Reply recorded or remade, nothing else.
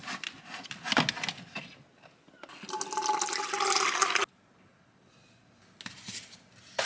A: recorded